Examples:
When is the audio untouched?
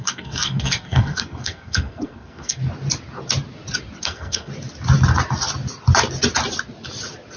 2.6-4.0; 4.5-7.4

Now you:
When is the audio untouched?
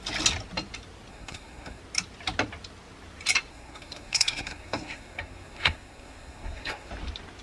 0.0-1.1; 1.8-3.5; 6.9-7.4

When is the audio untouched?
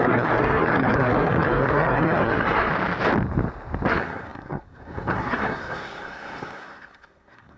2.7-3.9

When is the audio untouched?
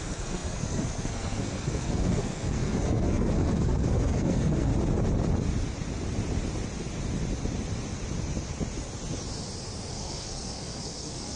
4.7-9.9